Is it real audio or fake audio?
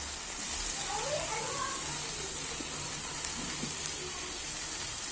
real